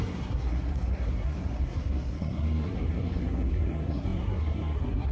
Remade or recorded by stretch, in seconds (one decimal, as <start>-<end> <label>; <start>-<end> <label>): 0.0-5.1 remade